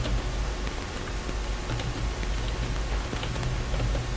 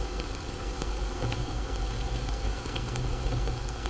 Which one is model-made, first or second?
second